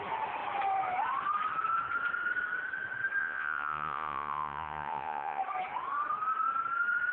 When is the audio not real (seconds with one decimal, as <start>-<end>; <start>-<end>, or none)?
3.2-5.4